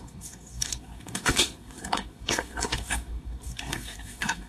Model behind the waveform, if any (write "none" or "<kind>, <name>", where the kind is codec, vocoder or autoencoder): codec, SNAC